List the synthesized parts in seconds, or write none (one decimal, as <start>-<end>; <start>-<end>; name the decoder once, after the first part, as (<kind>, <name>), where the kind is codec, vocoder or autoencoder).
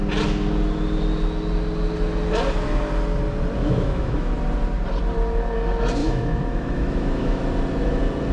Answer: 3.6-4.3 (autoencoder, DAC-VAE); 6.0-7.4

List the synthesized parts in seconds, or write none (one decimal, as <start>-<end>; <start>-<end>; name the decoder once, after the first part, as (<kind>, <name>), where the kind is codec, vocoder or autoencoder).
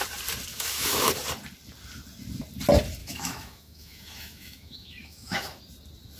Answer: 0.5-1.1 (autoencoder, DAC-VAE); 3.0-5.6